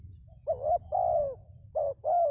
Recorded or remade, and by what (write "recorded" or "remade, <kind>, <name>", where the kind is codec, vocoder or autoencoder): recorded